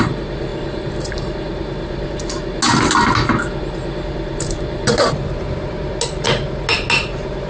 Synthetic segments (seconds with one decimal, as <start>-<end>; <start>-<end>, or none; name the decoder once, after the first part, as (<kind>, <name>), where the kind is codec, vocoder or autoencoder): 0.0-2.5 (vocoder, BigVGAN v2); 7.0-7.5